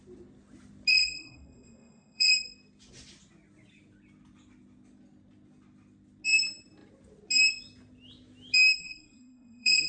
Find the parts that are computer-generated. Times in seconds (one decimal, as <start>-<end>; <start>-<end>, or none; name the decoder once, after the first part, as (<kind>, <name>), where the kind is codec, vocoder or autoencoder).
0.9-2.3 (codec, SNAC); 8.8-9.9